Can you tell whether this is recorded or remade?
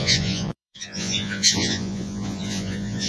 remade